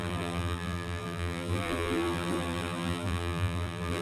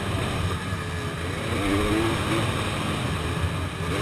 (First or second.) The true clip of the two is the second